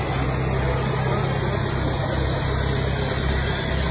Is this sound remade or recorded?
recorded